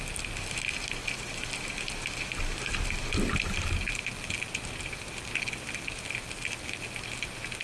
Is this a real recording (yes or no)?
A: yes